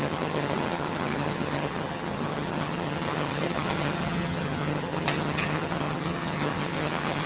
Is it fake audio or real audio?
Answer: fake